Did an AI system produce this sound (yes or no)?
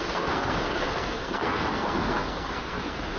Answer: yes